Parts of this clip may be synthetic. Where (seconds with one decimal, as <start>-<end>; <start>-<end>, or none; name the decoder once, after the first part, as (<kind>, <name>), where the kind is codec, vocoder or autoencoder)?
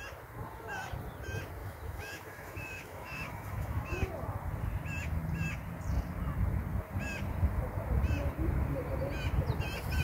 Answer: 1.6-4.1 (autoencoder, DAC-VAE)